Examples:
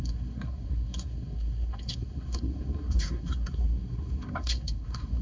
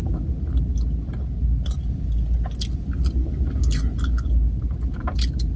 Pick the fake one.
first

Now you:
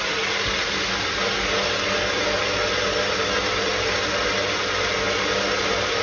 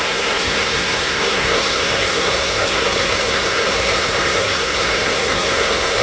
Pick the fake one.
second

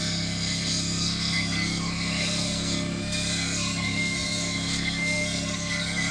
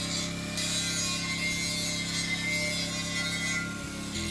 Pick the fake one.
first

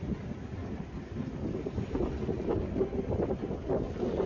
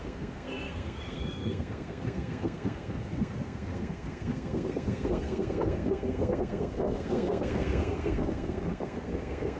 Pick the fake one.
second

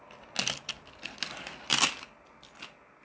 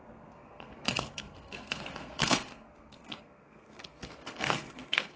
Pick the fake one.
second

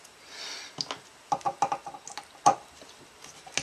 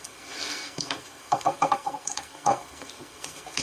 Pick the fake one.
second